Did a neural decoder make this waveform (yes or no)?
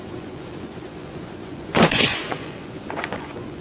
yes